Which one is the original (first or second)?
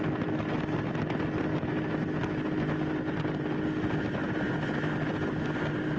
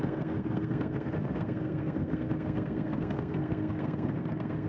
first